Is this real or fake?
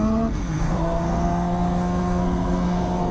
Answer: fake